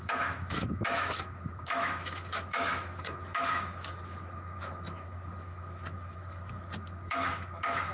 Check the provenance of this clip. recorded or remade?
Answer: remade